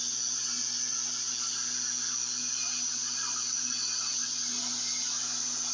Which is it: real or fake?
real